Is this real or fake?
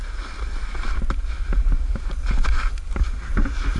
real